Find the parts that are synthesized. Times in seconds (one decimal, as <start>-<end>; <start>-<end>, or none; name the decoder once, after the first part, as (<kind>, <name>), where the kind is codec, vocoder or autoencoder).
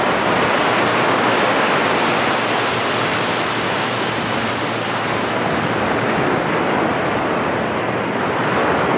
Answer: 0.9-1.7 (codec, DAC)